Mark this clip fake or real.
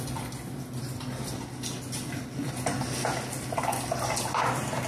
real